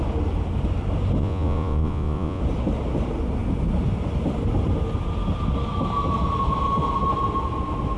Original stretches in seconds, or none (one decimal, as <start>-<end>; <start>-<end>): 0.0-1.2; 2.4-8.0